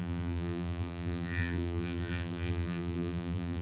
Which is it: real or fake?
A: fake